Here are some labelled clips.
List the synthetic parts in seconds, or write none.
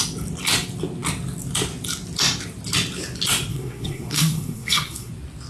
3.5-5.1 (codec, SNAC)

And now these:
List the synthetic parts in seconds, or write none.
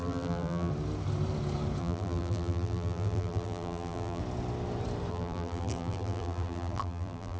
0.0-0.7 (vocoder, BigVGAN v2); 1.8-4.2; 5.1-7.4